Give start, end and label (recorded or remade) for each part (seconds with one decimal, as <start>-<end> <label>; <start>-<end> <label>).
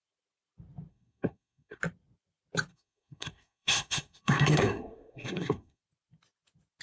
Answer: 0.0-0.9 recorded; 0.9-1.8 remade; 1.8-2.7 recorded; 2.7-5.8 remade; 5.8-6.8 recorded